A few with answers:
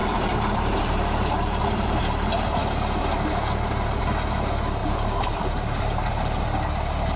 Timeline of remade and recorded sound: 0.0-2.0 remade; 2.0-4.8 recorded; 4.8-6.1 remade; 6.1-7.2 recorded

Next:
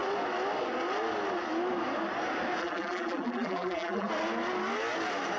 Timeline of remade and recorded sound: 0.0-2.6 recorded; 2.6-4.1 remade; 4.1-5.4 recorded

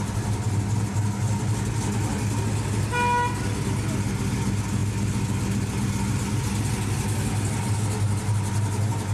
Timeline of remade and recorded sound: 0.0-9.1 recorded

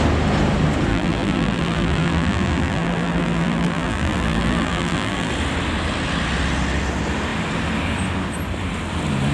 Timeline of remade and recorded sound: 0.0-0.9 recorded; 0.9-5.3 remade; 5.3-9.3 recorded

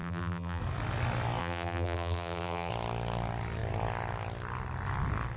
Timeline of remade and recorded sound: 0.0-0.6 remade; 0.6-1.4 recorded; 1.4-2.7 remade; 2.7-5.4 recorded

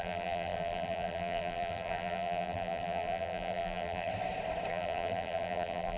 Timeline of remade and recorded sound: 0.0-4.1 remade; 4.1-4.7 recorded; 4.7-6.0 remade